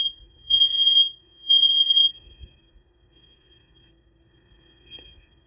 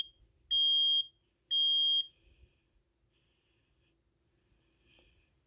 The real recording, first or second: second